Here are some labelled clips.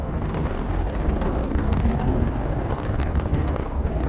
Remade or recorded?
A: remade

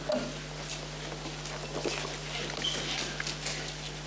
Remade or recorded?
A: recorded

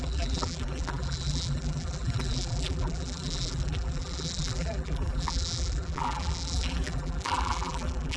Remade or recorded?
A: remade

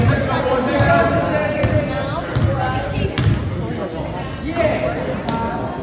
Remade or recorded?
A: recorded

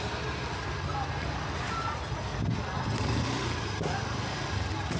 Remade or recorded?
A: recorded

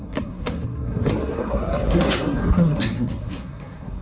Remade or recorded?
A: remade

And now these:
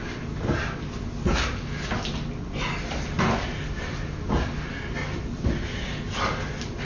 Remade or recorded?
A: recorded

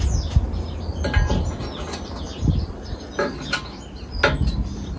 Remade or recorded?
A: recorded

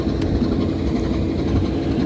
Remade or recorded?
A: recorded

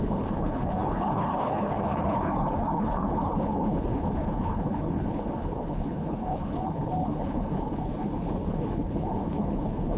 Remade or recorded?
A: remade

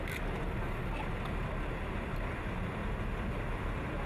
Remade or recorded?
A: recorded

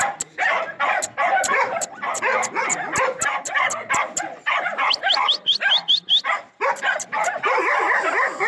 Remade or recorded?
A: recorded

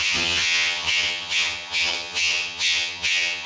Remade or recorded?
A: remade